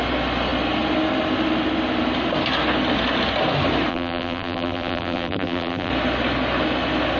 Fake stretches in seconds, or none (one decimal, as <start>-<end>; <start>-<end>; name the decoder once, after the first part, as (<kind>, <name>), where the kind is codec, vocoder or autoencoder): 3.9-5.9 (vocoder, BigVGAN v2)